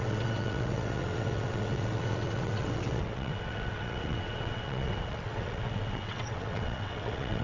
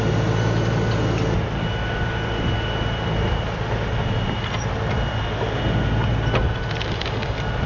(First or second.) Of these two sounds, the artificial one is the first